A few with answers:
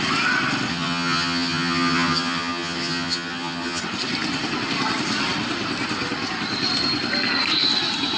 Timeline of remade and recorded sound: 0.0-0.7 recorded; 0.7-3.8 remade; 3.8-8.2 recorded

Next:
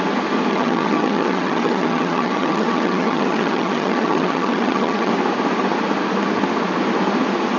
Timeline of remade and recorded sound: 0.0-0.5 recorded; 0.5-5.1 remade; 5.1-7.6 recorded

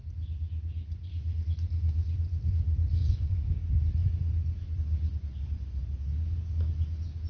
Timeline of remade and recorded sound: 0.0-3.0 recorded; 3.0-3.5 remade; 3.5-7.3 recorded

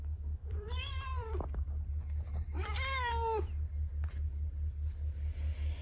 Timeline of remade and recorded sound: 0.0-0.4 recorded; 0.4-1.9 remade; 1.9-5.8 recorded

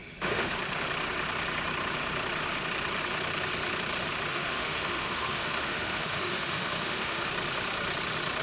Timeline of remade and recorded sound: 0.0-0.5 remade; 0.5-4.3 recorded; 4.3-7.3 remade; 7.3-8.4 recorded

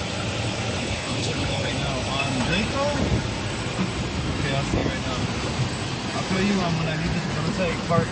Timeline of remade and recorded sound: 0.0-0.8 recorded; 0.8-1.7 remade; 1.7-8.1 recorded